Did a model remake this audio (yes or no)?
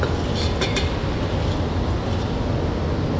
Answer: no